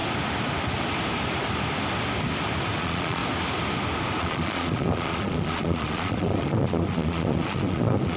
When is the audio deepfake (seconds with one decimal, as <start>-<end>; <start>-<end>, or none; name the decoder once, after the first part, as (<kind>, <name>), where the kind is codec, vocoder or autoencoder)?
2.8-3.2 (vocoder, Vocos); 4.2-8.2